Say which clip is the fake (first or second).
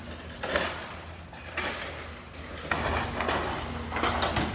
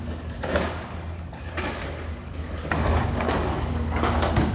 second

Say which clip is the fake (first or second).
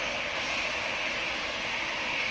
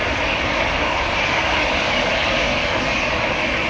second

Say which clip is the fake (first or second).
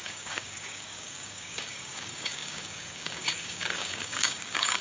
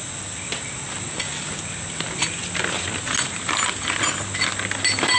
first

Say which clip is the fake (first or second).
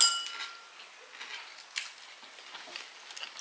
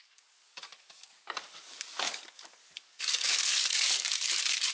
second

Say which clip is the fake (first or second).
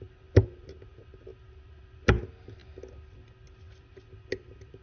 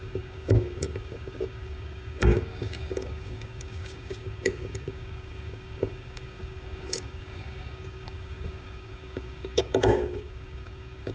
second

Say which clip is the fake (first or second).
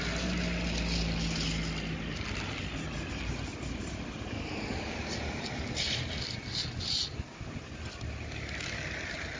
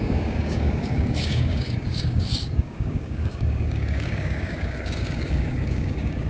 second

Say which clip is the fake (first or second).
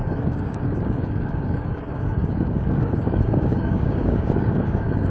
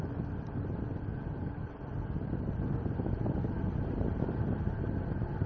first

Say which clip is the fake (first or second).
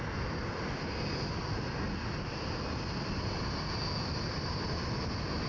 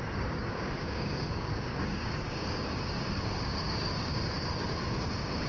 second